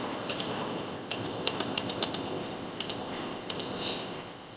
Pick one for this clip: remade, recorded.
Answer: remade